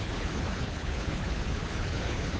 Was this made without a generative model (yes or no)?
no